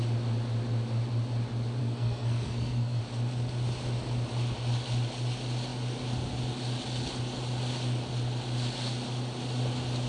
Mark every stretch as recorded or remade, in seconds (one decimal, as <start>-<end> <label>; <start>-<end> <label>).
0.0-1.8 recorded; 1.8-3.0 remade; 3.0-10.1 recorded